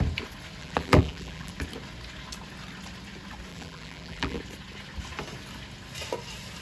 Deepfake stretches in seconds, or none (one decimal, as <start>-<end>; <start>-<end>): 0.6-1.5; 3.5-4.4